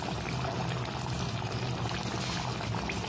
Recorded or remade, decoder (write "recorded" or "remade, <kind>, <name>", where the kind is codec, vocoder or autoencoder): recorded